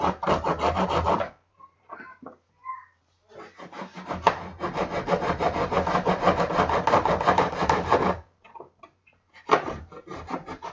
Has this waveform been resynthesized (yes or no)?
yes